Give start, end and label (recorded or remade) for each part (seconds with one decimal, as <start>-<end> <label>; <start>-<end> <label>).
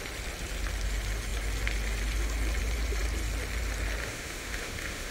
0.0-4.0 recorded; 4.0-5.1 remade